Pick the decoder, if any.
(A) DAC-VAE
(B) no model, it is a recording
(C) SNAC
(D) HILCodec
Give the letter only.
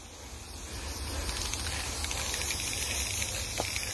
B